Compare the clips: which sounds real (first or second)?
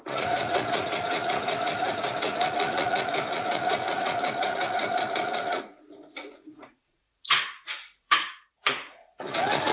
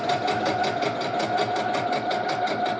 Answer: second